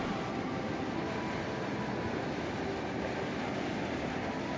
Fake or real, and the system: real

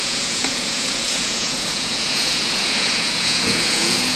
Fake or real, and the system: fake, vocoder, Vocos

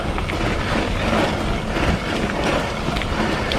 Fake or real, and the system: real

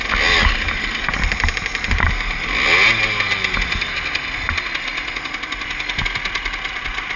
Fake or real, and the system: real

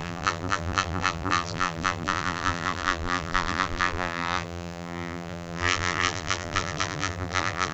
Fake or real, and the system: fake, vocoder, BigVGAN v2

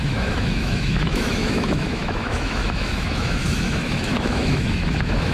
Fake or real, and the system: fake, autoencoder, DAC-VAE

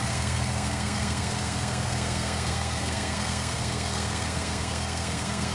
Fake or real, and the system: fake, codec, SNAC